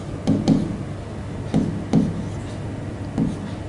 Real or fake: real